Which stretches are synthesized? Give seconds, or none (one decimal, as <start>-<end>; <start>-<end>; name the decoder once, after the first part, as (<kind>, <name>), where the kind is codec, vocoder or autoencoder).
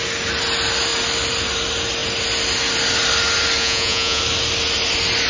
3.6-4.2 (vocoder, Vocos)